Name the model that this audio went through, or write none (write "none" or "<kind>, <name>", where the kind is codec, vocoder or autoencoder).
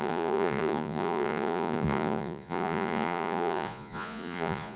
vocoder, Vocos